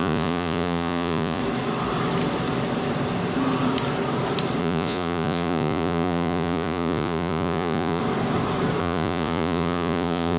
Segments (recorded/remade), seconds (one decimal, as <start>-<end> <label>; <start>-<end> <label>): 0.0-1.4 remade; 1.4-4.6 recorded; 4.6-8.0 remade; 8.0-8.8 recorded; 8.8-10.4 remade